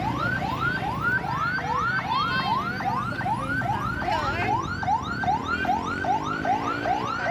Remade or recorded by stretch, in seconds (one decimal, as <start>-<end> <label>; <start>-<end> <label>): 0.0-7.3 recorded